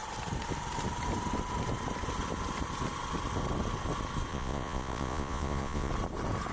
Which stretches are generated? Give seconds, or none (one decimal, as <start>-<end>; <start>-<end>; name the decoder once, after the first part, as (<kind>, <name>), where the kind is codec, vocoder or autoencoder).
4.3-5.9 (vocoder, Vocos)